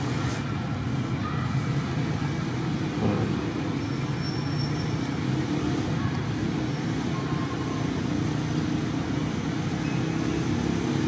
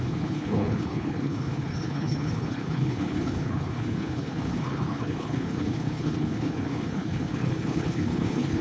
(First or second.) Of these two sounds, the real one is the first